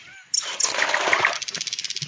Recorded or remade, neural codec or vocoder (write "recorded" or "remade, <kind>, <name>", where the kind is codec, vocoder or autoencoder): recorded